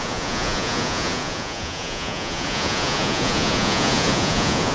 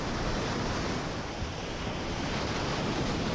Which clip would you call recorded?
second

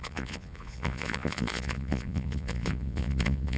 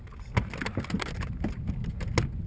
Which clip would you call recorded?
second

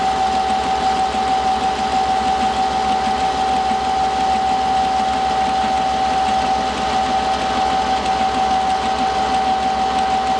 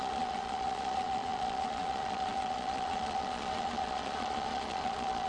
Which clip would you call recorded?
first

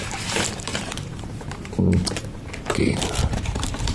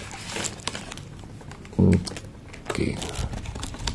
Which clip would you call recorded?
second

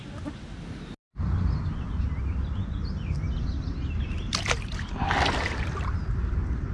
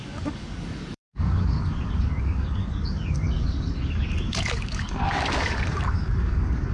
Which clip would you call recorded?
first